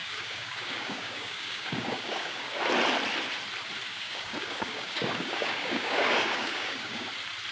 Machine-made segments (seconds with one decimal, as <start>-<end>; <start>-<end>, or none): 0.0-2.6; 3.9-7.1